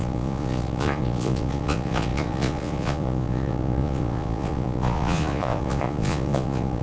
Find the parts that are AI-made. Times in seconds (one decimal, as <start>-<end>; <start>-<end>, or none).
0.0-6.8